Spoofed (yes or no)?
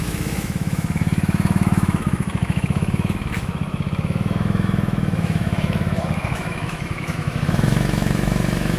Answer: yes